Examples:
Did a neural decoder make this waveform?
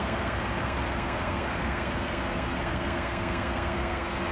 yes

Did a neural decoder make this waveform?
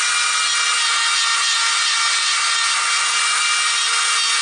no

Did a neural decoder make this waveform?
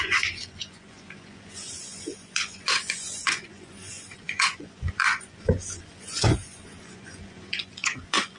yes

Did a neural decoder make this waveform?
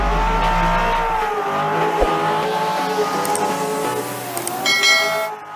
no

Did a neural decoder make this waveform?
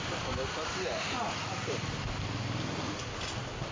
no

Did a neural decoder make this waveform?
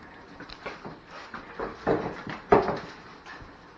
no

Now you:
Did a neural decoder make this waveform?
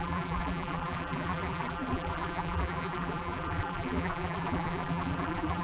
yes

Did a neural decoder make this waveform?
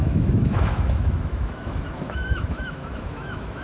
yes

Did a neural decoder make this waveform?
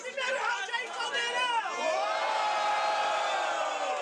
no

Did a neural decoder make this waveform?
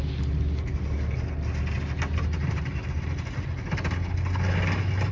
no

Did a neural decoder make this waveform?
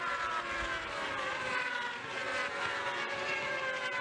no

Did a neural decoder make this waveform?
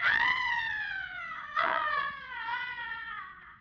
yes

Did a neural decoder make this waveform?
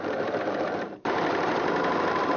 yes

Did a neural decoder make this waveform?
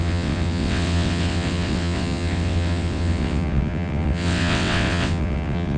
yes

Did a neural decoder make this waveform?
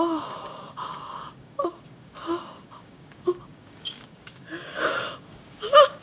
yes